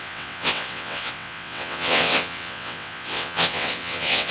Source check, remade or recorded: remade